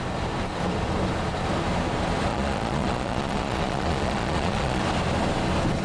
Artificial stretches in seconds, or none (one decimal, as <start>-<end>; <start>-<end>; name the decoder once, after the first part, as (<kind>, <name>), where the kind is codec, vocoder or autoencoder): 2.3-4.8 (vocoder, Vocos)